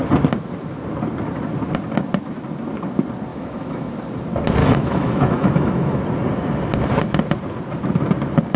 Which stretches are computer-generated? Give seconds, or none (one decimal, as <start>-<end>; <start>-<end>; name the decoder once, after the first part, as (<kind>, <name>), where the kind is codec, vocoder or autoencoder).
3.3-3.9 (autoencoder, DAC-VAE); 4.6-6.0